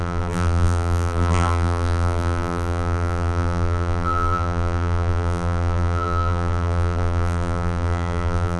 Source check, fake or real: fake